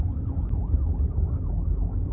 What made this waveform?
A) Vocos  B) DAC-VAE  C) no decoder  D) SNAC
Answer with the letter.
C